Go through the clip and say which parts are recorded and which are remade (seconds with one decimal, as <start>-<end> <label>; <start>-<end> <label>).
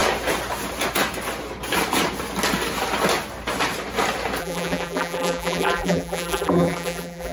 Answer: 0.0-4.4 recorded; 4.4-7.3 remade